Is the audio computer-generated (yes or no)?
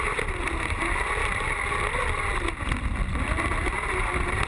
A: no